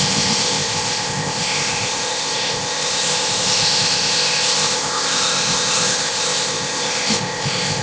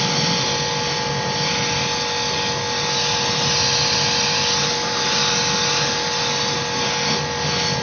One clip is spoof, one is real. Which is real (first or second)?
second